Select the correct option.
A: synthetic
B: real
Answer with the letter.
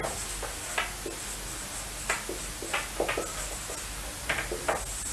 B